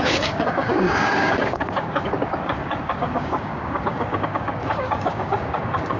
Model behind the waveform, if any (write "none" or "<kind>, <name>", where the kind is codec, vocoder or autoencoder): codec, DAC